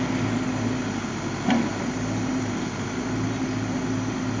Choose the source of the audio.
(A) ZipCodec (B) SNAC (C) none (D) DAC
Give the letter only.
C